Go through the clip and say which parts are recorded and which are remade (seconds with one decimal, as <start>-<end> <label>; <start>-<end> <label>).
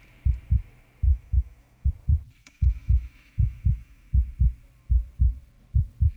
0.0-1.1 recorded; 1.1-1.9 remade; 1.9-2.4 recorded; 2.4-4.1 remade; 4.1-6.2 recorded